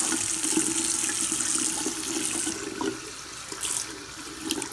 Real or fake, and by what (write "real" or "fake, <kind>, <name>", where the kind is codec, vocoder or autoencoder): real